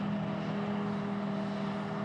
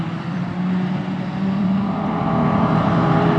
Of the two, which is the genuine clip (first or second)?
first